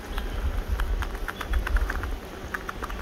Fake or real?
real